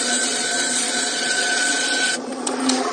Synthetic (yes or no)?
yes